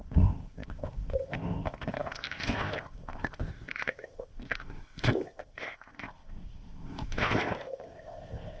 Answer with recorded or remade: remade